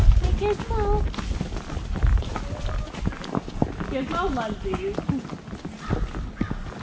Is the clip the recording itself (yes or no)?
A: yes